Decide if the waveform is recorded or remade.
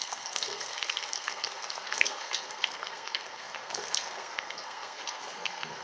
remade